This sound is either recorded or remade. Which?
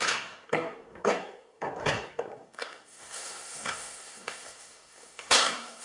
remade